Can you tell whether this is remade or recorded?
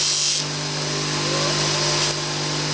recorded